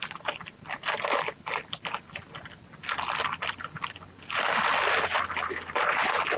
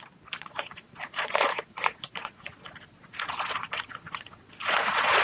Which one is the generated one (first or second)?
second